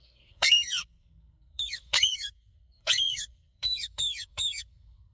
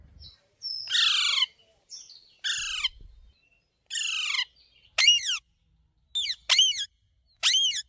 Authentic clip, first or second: second